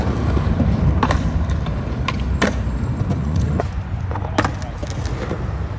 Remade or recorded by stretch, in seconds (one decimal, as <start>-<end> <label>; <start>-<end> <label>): 0.0-3.1 recorded; 3.1-4.2 remade; 4.2-5.8 recorded